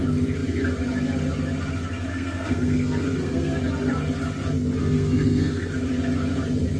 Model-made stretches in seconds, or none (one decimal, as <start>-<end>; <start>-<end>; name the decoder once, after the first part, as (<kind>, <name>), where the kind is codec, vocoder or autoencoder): 2.1-3.6 (codec, SNAC); 4.8-5.7